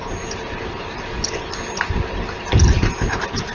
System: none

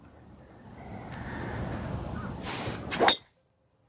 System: none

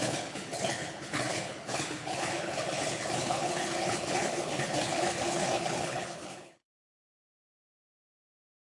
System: codec, HILCodec